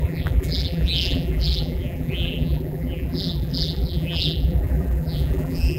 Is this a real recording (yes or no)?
no